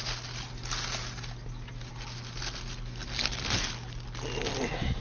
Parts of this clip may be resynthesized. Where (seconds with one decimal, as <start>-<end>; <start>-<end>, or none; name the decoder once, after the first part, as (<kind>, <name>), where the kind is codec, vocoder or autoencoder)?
none